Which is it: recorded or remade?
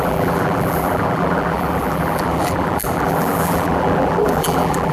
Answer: remade